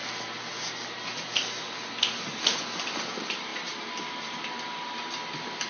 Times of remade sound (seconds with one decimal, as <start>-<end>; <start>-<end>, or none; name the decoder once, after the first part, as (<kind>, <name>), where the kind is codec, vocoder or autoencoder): none